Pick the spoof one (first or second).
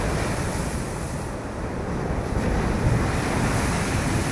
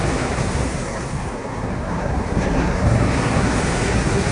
second